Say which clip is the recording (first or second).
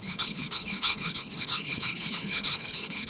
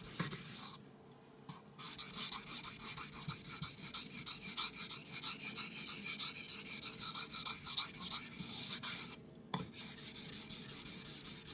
second